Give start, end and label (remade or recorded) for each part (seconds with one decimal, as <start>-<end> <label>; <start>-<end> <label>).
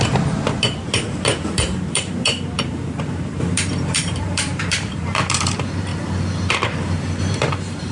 0.0-5.9 remade; 5.9-7.2 recorded; 7.2-7.9 remade